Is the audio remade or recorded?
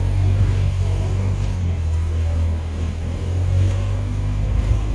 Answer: remade